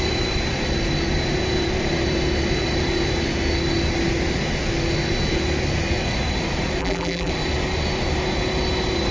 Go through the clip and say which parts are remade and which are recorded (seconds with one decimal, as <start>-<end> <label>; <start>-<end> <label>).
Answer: 0.0-6.8 recorded; 6.8-7.3 remade; 7.3-9.1 recorded